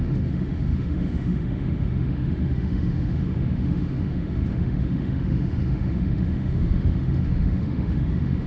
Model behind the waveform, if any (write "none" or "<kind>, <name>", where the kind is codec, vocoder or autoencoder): autoencoder, DAC-VAE